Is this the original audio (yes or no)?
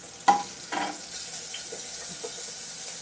yes